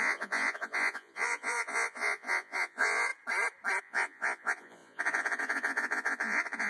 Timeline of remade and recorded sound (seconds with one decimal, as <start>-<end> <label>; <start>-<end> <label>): 0.0-3.1 remade; 3.1-3.8 recorded; 3.8-6.7 remade